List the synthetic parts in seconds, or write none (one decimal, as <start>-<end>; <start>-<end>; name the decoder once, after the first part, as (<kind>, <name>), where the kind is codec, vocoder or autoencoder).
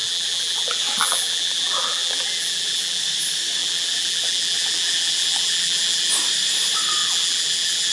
0.0-3.0 (vocoder, BigVGAN v2); 3.6-6.1; 7.0-7.9